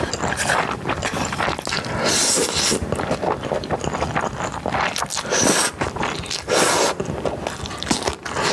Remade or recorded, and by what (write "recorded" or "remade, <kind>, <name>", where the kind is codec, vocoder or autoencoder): recorded